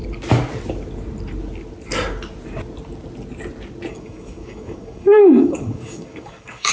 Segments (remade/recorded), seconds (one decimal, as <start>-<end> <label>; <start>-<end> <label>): 0.0-3.9 recorded; 3.9-6.7 remade